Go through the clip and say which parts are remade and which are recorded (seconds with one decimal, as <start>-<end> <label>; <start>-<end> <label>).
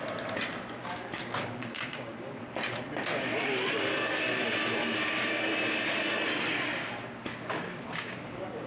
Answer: 0.0-0.8 recorded; 0.8-2.4 remade; 2.4-7.3 recorded; 7.3-8.7 remade